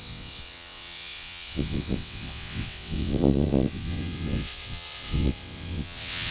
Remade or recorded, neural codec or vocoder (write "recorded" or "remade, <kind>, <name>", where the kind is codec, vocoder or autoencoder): remade, vocoder, WaveNeXt